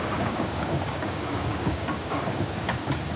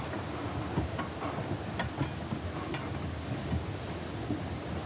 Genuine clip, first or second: second